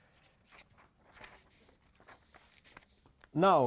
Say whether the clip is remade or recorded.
recorded